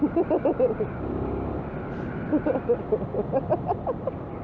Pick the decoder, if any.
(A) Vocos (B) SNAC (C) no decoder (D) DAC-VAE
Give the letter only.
C